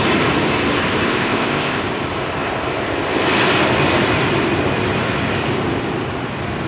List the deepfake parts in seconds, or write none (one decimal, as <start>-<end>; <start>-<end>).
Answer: 1.1-1.8